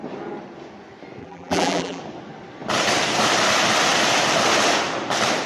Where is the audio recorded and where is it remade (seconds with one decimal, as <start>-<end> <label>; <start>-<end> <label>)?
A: 0.0-1.2 recorded; 1.2-2.0 remade; 2.0-5.5 recorded